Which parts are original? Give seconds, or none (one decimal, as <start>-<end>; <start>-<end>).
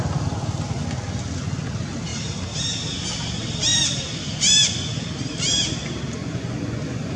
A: 0.0-6.2